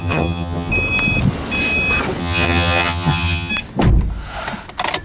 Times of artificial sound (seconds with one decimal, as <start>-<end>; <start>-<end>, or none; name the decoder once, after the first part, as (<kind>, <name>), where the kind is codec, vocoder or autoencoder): 0.0-0.7 (vocoder, HiFi-GAN); 2.2-3.5

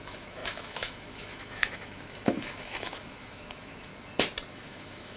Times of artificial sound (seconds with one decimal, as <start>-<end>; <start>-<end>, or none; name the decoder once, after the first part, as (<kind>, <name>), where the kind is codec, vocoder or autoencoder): 0.0-3.9 (autoencoder, DAC-VAE); 4.5-5.2